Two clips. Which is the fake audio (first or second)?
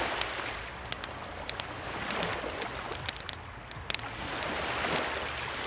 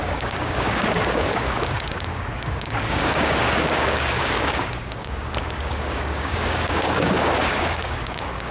second